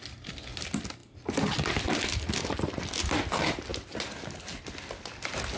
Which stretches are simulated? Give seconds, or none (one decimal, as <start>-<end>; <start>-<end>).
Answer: none